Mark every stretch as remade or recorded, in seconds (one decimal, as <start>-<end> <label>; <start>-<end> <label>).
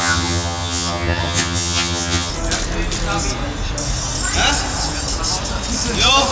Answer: 0.0-2.3 remade; 2.3-6.3 recorded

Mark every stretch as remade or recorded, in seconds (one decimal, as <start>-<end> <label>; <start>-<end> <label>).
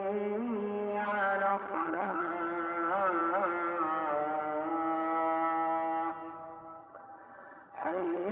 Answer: 0.0-1.5 recorded; 1.5-2.3 remade; 2.3-6.8 recorded; 6.8-8.3 remade